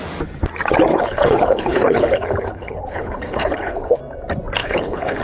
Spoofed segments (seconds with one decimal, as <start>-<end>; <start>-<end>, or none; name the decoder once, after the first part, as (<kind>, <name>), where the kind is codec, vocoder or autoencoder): 0.9-4.0 (codec, HILCodec); 4.6-5.2